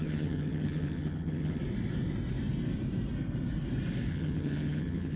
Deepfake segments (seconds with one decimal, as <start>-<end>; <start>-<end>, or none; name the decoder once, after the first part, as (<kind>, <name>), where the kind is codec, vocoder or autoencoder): 0.0-1.6 (vocoder, HiFi-GAN); 4.1-5.2